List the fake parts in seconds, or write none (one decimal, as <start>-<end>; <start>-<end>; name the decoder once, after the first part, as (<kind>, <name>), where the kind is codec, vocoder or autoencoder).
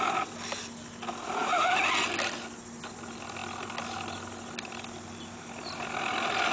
none